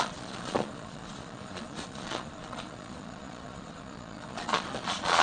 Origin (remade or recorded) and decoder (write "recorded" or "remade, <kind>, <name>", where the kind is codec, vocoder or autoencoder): remade, vocoder, Vocos